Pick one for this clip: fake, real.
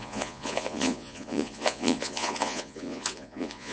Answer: fake